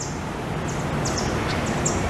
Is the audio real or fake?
real